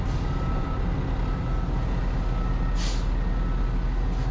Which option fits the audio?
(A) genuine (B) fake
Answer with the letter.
A